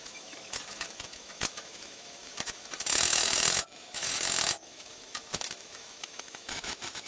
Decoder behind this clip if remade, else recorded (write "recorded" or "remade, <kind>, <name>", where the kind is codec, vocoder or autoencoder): remade, autoencoder, DAC-VAE